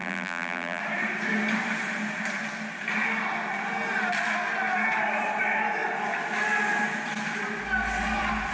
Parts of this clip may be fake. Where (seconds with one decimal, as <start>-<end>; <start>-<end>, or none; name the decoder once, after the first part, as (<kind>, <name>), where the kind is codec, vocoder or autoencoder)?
0.0-0.8 (vocoder, BigVGAN v2)

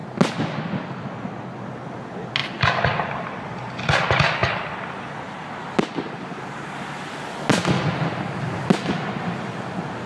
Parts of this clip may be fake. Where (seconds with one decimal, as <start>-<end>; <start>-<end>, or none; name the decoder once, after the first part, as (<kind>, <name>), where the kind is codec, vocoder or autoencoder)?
none

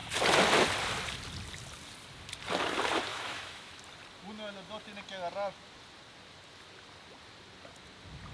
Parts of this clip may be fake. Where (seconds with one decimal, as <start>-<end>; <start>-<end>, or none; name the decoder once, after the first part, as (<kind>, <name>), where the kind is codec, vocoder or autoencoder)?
3.1-3.8 (autoencoder, DAC-VAE)

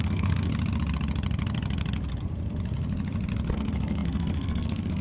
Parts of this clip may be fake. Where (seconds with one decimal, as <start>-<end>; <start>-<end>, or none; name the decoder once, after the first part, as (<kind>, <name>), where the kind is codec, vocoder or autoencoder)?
0.0-0.5 (codec, SNAC); 3.5-5.0

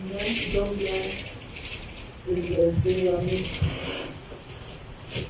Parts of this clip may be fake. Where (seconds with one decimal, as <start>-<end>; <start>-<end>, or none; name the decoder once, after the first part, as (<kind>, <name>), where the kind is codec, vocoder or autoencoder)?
1.7-2.8 (vocoder, Vocos); 4.2-5.3

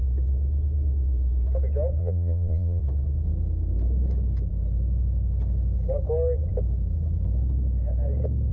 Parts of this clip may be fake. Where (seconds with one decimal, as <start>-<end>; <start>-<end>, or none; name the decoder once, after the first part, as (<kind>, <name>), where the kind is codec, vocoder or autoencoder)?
2.0-2.8 (vocoder, Vocos)

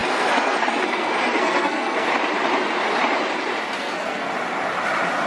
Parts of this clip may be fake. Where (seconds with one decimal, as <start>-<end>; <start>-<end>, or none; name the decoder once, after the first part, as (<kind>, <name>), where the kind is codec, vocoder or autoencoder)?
0.0-2.1 (codec, SNAC); 3.8-4.3